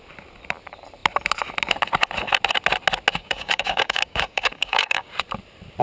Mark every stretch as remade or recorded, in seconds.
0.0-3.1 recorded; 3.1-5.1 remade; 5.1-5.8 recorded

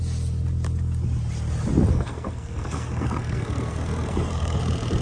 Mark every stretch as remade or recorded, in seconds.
0.0-1.9 recorded; 1.9-4.6 remade; 4.6-5.0 recorded

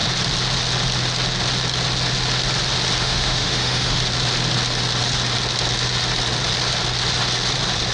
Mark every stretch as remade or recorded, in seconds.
0.0-3.0 recorded; 3.0-4.0 remade; 4.0-7.9 recorded

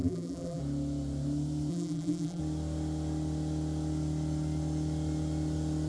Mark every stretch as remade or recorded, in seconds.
0.0-0.6 remade; 0.6-1.7 recorded; 1.7-2.4 remade; 2.4-5.9 recorded

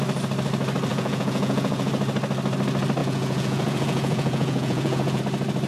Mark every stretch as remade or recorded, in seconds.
0.0-0.9 recorded; 0.9-1.9 remade; 1.9-3.0 recorded; 3.0-5.2 remade; 5.2-5.7 recorded